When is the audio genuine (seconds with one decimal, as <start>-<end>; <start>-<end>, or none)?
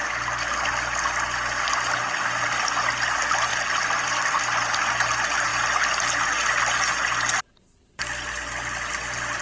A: 0.0-9.4